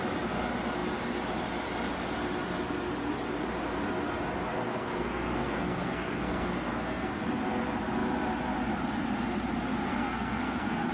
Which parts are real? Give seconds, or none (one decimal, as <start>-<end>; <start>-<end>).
0.0-4.5; 7.2-9.9